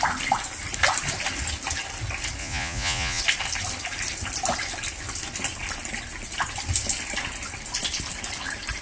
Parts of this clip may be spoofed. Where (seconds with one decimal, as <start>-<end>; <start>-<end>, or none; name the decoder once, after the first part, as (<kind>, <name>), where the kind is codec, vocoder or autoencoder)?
2.4-3.2 (vocoder, Vocos)

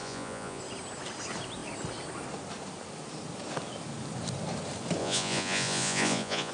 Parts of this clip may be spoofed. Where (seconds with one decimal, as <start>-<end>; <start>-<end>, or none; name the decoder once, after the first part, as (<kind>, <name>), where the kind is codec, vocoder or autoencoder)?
0.0-0.6 (vocoder, Vocos); 5.0-6.5